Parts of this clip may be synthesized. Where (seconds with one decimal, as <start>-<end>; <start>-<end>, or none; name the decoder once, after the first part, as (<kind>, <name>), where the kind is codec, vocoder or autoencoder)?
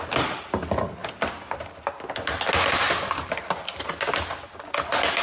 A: none